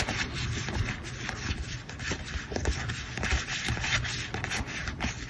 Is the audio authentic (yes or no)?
yes